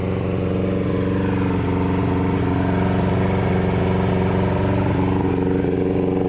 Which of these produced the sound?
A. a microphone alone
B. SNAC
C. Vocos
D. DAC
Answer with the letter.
A